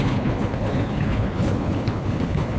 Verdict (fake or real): fake